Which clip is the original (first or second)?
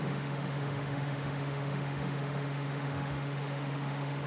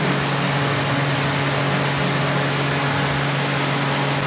second